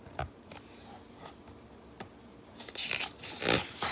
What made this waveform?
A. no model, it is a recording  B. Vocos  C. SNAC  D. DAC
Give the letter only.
A